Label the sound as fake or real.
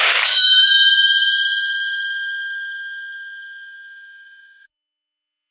fake